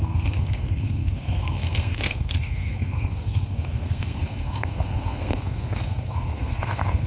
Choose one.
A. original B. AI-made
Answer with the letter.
B